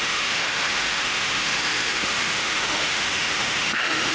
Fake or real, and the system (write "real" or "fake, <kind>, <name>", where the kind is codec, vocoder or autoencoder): fake, autoencoder, DAC-VAE